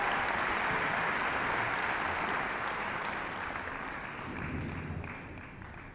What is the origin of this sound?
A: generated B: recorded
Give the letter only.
B